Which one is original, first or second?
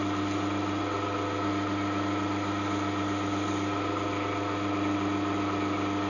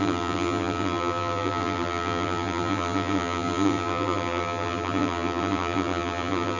first